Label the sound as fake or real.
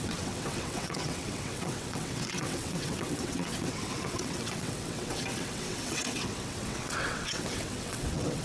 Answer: fake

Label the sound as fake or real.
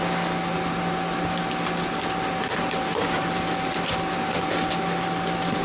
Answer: real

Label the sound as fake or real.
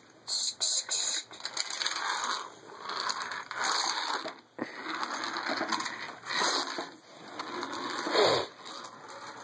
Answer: real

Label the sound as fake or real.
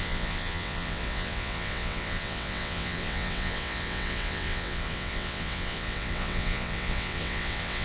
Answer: fake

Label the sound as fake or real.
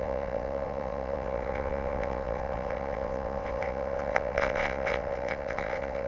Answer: fake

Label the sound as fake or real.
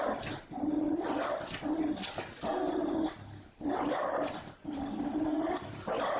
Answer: real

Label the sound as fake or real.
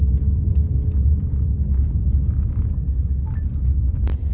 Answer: real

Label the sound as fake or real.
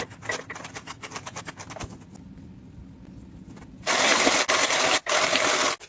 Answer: real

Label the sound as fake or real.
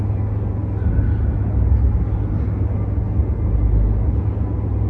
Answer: real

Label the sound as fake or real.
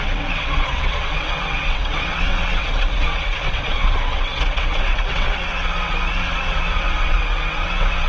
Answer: fake